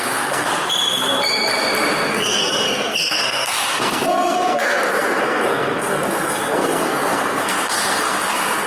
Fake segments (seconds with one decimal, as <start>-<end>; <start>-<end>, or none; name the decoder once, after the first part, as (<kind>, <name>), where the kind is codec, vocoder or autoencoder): 0.0-0.5 (codec, SNAC); 2.1-8.7